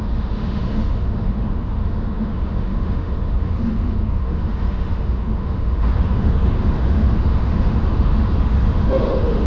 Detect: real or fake fake